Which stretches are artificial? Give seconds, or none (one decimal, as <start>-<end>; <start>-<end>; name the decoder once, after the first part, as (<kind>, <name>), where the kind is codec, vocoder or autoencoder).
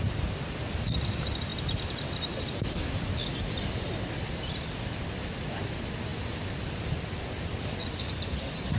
0.0-1.5 (vocoder, BigVGAN v2); 2.2-8.8